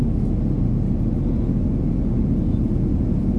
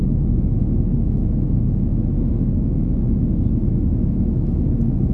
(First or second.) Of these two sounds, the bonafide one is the first